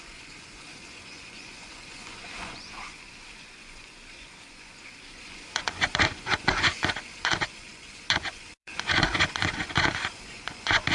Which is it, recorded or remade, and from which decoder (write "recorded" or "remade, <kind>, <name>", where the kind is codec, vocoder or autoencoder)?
remade, vocoder, Vocos